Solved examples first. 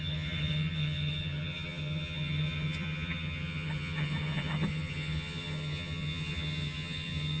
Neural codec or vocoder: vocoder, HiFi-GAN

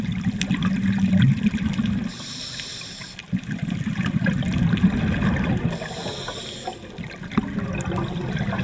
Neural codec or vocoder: none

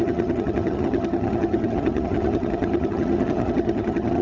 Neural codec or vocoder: vocoder, HiFi-GAN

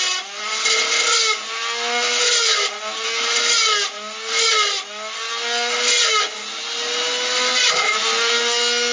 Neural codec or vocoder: none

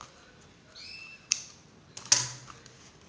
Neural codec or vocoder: none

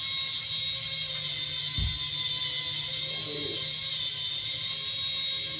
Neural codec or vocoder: none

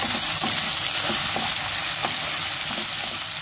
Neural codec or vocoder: none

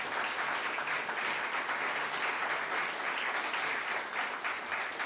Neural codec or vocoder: none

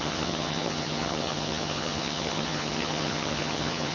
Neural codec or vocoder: vocoder, HiFi-GAN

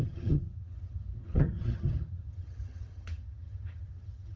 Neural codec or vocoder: vocoder, HiFi-GAN